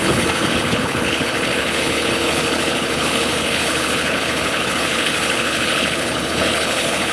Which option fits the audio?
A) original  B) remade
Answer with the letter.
B